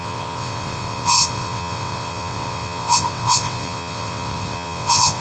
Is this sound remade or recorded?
remade